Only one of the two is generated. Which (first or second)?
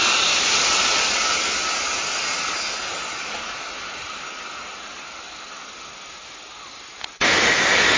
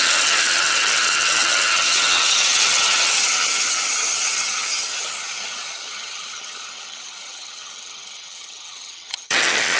second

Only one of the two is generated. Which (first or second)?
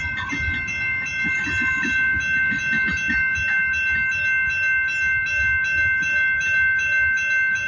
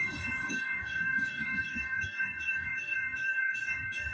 second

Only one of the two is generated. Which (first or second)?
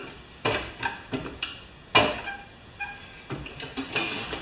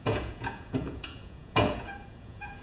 second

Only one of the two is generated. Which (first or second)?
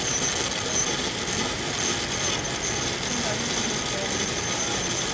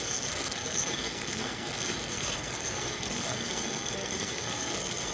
second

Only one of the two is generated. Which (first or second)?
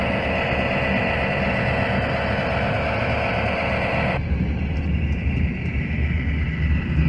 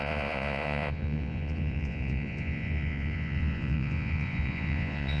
second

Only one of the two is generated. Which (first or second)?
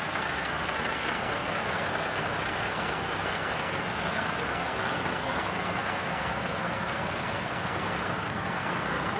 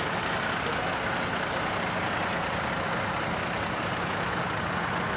first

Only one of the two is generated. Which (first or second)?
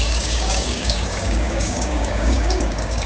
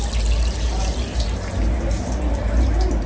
first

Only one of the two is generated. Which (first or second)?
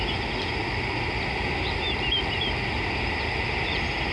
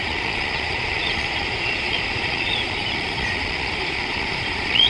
second